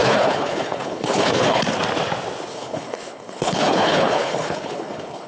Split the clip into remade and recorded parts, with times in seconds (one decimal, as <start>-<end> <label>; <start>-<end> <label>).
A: 0.0-1.6 remade; 1.6-2.5 recorded; 2.5-5.3 remade